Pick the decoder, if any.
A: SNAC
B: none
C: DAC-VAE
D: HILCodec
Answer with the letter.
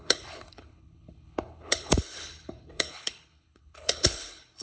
D